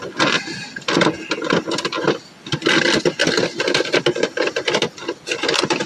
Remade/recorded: recorded